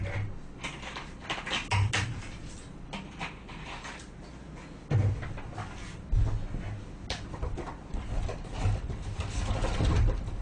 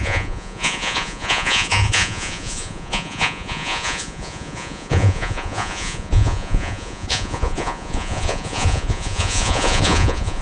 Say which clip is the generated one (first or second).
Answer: second